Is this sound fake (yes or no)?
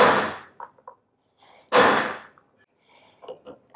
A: no